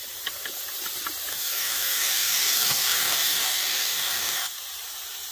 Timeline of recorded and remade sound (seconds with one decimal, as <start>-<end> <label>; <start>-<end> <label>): 0.0-1.3 recorded; 1.3-4.5 remade; 4.5-5.3 recorded